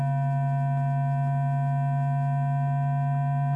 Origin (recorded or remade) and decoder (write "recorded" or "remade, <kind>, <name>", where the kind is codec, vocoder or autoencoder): recorded